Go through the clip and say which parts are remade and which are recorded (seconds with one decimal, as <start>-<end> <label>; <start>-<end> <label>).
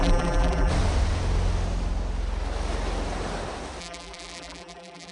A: 0.0-0.7 remade; 0.7-3.8 recorded; 3.8-5.1 remade